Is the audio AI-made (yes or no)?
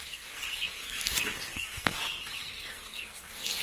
yes